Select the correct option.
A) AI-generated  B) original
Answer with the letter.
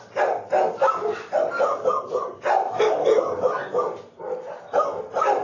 B